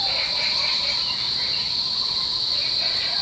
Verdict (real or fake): real